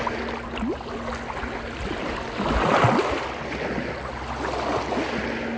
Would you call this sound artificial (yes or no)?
no